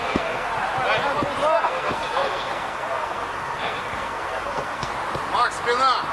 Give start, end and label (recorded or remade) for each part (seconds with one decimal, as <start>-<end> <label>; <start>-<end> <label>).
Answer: 0.0-0.5 remade; 0.5-1.6 recorded; 1.6-4.9 remade; 4.9-6.1 recorded